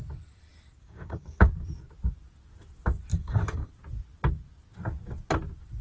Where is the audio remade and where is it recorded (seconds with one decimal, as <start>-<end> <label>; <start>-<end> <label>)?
0.0-0.8 recorded; 0.8-1.5 remade; 1.5-3.1 recorded; 3.1-3.7 remade; 3.7-5.8 recorded